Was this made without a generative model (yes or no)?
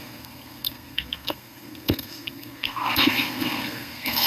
no